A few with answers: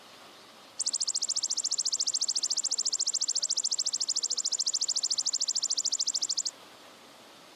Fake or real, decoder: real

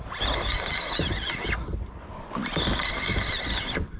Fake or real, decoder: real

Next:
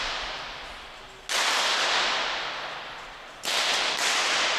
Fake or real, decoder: real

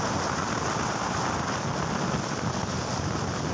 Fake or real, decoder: real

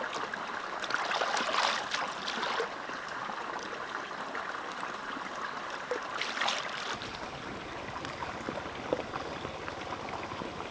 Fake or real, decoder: real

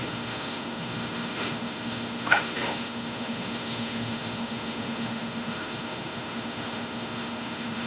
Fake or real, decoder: fake, autoencoder, DAC-VAE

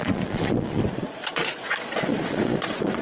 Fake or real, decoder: fake, vocoder, Vocos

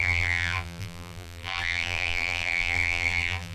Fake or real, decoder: fake, vocoder, BigVGAN v2